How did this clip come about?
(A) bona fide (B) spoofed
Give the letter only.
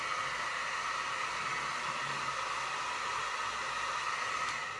A